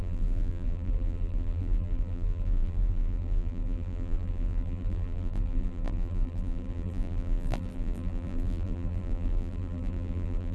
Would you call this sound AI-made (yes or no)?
yes